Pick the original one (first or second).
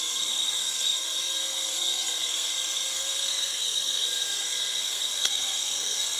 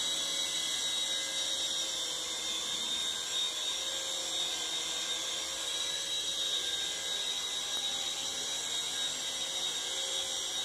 second